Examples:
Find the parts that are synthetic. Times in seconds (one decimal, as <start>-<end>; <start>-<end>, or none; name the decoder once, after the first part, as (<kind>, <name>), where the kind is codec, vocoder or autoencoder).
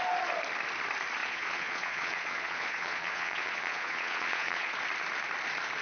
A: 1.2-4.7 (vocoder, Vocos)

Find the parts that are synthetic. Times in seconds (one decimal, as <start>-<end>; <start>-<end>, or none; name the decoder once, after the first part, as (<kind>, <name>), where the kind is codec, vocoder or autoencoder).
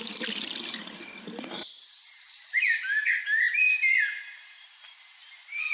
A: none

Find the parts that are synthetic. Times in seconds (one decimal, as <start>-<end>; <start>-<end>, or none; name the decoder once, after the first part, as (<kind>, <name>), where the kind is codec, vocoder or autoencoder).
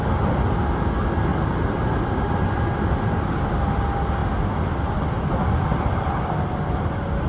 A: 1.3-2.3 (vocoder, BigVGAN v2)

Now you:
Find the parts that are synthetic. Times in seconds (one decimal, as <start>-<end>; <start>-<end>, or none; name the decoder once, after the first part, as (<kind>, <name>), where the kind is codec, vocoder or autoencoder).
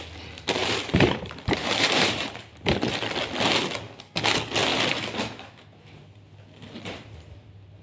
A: 0.6-2.3 (vocoder, BigVGAN v2)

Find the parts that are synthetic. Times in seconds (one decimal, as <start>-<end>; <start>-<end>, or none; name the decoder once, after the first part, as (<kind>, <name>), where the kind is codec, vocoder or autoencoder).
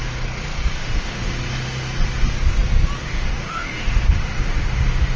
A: 0.8-1.3 (autoencoder, DAC-VAE); 3.0-5.2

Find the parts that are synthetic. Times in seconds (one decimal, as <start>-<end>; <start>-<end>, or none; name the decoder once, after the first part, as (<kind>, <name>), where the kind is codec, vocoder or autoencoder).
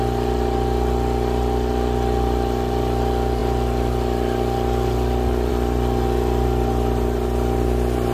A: none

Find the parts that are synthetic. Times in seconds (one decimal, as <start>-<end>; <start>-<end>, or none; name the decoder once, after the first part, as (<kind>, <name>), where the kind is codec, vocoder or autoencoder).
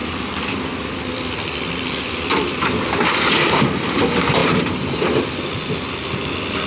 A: 0.0-4.0 (vocoder, BigVGAN v2); 4.4-5.6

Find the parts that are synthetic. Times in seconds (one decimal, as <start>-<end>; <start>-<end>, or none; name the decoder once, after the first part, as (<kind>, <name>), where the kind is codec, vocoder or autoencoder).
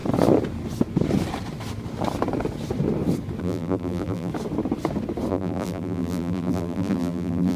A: 3.4-4.3 (vocoder, BigVGAN v2); 5.3-7.6